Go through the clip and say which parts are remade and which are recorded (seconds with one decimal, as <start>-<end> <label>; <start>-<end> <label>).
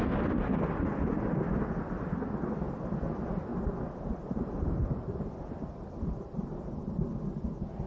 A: 0.0-3.5 recorded; 3.5-6.9 remade; 6.9-7.9 recorded